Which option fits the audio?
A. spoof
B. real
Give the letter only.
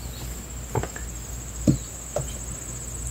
B